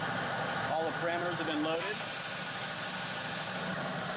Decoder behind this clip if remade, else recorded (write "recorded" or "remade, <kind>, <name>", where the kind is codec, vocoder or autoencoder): recorded